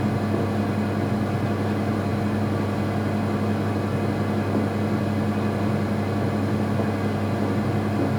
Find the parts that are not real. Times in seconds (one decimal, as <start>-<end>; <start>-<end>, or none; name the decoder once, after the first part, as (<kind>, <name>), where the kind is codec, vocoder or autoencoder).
none